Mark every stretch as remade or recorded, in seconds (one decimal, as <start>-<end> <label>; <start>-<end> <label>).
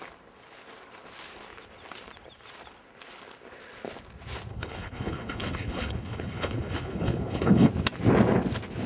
0.0-4.5 recorded; 4.5-7.7 remade; 7.7-8.9 recorded